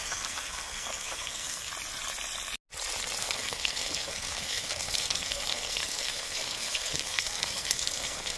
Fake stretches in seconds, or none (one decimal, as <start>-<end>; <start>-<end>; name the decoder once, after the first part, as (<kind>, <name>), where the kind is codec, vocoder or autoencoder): 0.0-1.7 (codec, SNAC); 3.2-8.4